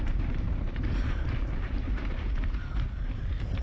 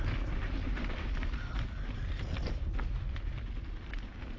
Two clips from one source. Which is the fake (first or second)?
first